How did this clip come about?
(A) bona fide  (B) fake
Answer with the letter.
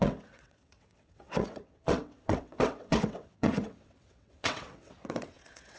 B